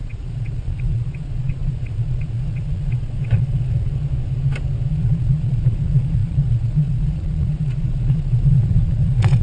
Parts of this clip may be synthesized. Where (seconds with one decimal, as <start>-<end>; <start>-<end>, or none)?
0.0-3.9; 4.9-9.4